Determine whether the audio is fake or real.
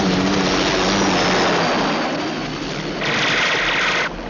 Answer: real